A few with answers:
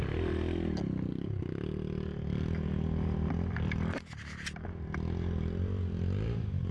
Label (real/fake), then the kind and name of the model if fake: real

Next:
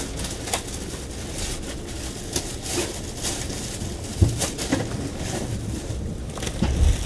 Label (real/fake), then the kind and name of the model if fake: real